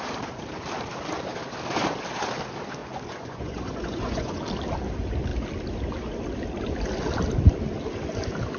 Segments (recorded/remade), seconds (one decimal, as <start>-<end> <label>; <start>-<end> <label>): 0.0-2.8 recorded; 2.8-4.4 remade; 4.4-8.6 recorded